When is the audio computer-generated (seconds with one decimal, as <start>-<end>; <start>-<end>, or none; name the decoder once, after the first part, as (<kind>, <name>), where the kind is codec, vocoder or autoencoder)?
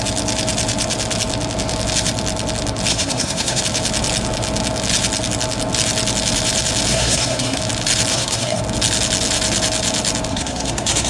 2.9-3.6 (codec, SNAC); 6.9-7.6; 8.1-8.6; 10.3-11.1